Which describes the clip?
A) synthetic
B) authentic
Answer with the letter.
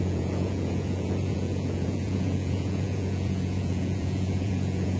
A